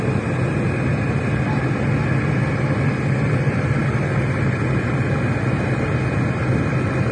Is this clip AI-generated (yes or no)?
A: no